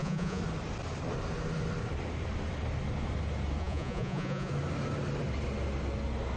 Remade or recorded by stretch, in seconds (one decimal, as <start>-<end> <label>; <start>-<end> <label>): 0.0-0.4 remade; 0.4-3.6 recorded; 3.6-4.5 remade; 4.5-6.4 recorded